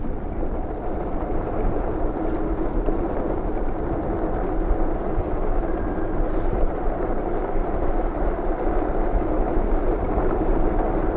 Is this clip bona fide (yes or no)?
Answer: yes